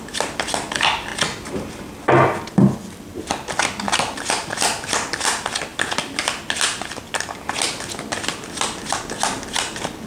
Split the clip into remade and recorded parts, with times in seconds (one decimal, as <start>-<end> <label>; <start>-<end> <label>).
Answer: 0.0-10.1 recorded